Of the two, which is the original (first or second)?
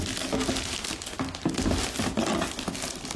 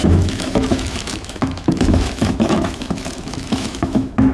first